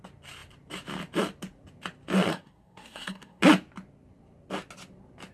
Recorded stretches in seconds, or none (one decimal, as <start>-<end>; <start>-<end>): 0.0-2.3; 3.4-5.3